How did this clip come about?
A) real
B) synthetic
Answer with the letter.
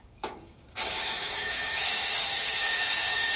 B